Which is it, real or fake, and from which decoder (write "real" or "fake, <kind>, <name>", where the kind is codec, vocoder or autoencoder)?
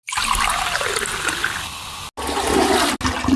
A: real